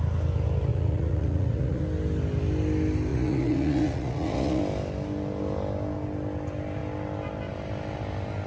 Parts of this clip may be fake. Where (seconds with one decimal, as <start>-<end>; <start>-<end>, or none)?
0.7-1.8; 3.1-4.6